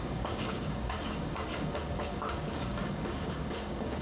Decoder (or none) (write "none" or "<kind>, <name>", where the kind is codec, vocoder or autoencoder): codec, DAC